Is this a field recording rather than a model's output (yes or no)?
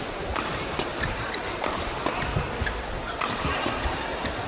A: yes